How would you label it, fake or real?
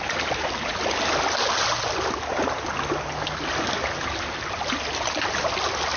real